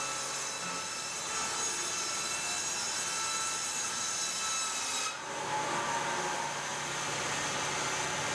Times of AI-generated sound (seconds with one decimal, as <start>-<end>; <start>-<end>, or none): 6.7-7.5